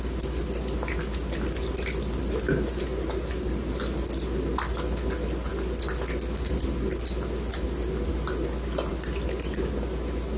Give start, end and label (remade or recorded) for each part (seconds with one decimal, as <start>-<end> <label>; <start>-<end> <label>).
0.0-10.4 recorded